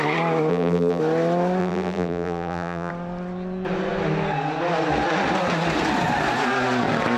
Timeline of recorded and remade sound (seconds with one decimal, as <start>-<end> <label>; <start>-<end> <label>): 0.0-0.5 recorded; 0.5-1.0 remade; 1.0-1.6 recorded; 1.6-2.9 remade; 2.9-7.2 recorded